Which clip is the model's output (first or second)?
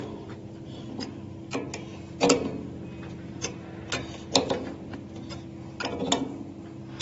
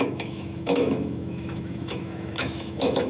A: second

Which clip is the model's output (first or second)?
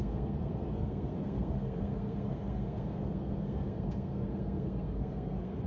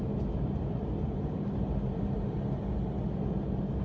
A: first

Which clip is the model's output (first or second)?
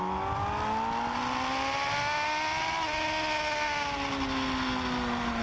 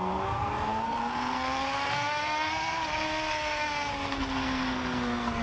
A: second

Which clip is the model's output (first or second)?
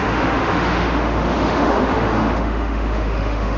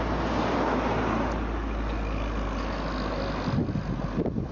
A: first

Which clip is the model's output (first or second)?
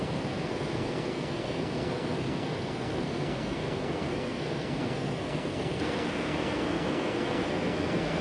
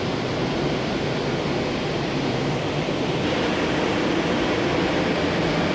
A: first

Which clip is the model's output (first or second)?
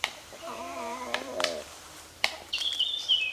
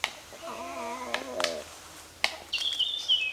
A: first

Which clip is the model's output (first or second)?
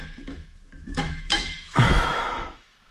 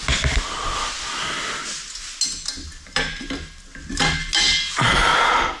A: first